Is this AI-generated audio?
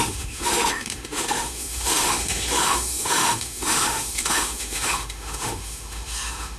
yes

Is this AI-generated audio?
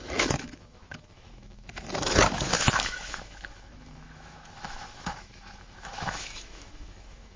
yes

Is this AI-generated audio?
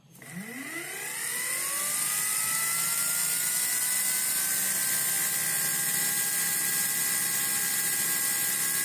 no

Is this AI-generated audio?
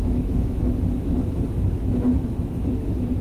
yes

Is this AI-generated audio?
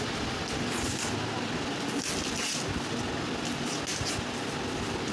no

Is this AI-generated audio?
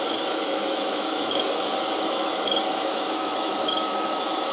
yes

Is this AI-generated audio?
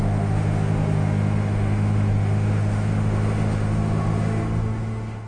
yes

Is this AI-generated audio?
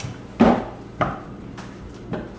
no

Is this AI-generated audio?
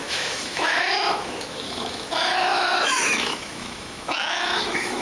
yes